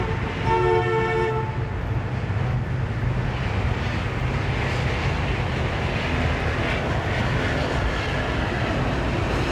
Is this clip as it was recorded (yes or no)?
yes